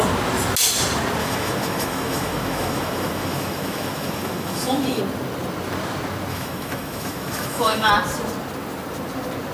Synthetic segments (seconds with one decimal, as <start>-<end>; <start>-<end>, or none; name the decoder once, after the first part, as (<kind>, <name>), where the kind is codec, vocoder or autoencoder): 1.2-5.0 (autoencoder, DAC-VAE); 6.3-7.9